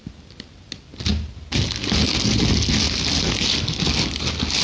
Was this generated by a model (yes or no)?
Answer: no